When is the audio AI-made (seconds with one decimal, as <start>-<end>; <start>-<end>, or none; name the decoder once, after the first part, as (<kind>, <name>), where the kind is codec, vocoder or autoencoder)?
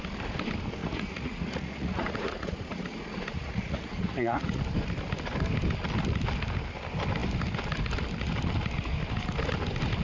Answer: 0.8-4.6 (vocoder, Vocos)